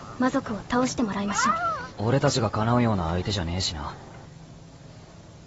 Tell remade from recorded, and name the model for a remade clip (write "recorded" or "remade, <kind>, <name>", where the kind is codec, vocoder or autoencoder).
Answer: recorded